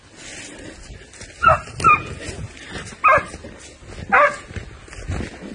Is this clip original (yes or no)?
yes